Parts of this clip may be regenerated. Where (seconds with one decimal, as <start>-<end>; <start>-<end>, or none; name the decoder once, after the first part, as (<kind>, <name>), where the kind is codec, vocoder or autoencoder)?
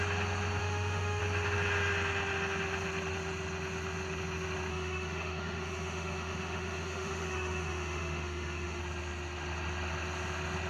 0.6-1.2 (autoencoder, DAC-VAE); 4.7-8.8